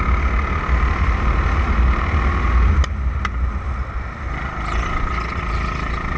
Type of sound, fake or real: real